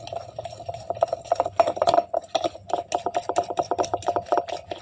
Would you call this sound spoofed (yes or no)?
no